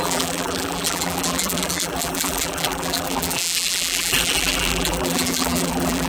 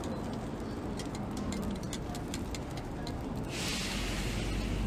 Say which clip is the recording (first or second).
second